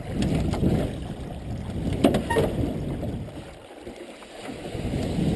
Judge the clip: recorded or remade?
recorded